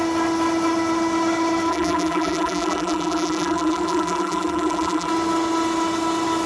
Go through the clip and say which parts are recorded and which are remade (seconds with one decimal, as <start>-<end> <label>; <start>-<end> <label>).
0.0-1.7 recorded; 1.7-5.1 remade; 5.1-6.5 recorded